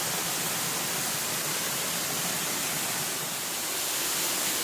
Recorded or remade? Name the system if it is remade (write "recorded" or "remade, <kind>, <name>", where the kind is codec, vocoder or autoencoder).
recorded